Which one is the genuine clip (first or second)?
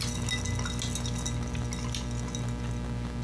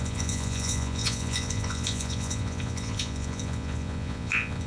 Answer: first